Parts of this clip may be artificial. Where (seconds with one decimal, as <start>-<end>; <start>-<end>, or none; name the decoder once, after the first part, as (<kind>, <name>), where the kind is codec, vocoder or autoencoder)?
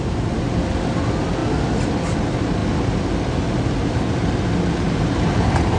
none